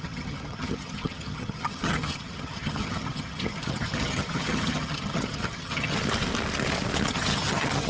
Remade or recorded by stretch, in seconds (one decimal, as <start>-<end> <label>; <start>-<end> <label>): 0.0-6.0 remade; 6.0-7.1 recorded; 7.1-7.9 remade

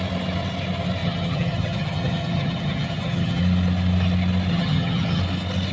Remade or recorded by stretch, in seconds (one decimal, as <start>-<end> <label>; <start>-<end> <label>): 0.0-1.0 recorded; 1.0-3.4 remade; 3.4-4.5 recorded; 4.5-5.2 remade; 5.2-5.7 recorded